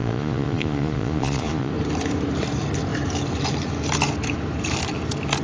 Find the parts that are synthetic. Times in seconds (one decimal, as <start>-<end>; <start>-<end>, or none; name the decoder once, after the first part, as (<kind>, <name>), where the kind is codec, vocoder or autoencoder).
0.0-1.7 (vocoder, Vocos)